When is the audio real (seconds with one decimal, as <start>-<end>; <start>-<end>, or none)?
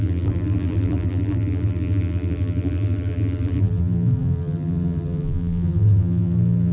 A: none